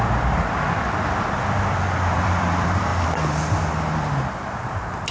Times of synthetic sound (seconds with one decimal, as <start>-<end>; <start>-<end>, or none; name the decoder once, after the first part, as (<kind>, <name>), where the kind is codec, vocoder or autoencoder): 0.0-2.9 (vocoder, BigVGAN v2); 3.9-5.1